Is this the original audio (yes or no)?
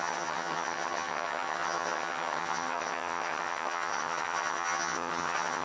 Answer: no